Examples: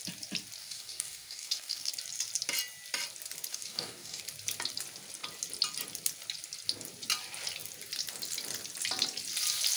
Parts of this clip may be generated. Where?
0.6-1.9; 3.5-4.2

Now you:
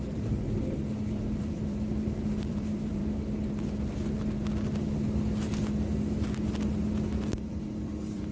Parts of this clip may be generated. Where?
0.0-0.4; 1.4-3.0; 7.3-8.3

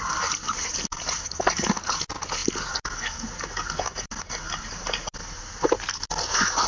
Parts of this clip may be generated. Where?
none

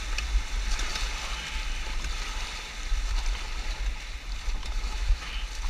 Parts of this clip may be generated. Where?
4.6-5.3